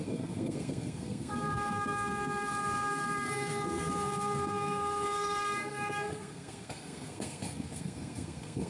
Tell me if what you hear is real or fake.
fake